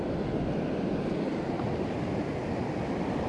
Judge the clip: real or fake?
real